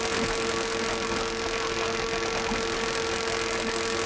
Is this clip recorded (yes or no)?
yes